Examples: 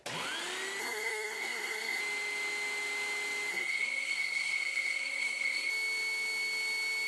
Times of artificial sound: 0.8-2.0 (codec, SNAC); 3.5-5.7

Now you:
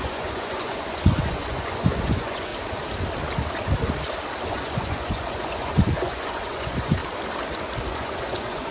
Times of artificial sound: 0.0-2.5 (vocoder, Vocos); 4.5-7.0; 7.9-8.7

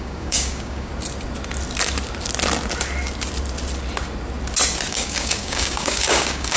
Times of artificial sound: 0.0-0.9 (codec, DAC); 4.9-6.6

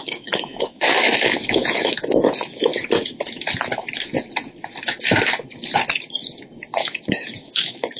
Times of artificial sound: 0.0-2.7 (autoencoder, DAC-VAE); 6.7-8.0

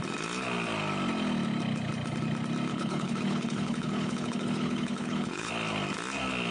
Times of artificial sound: 2.7-5.5 (codec, HILCodec)